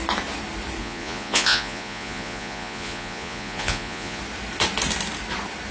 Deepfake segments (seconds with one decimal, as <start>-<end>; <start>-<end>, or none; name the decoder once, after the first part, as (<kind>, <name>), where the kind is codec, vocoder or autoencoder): 0.8-4.2 (vocoder, Vocos)